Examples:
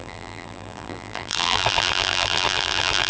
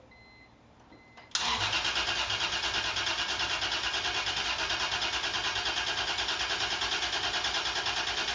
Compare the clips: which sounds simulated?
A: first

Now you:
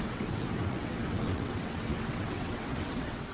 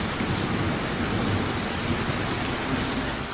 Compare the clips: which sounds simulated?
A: first